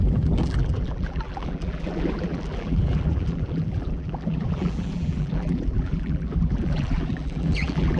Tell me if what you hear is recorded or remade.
remade